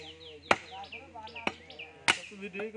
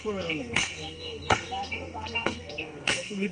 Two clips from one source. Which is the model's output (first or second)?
second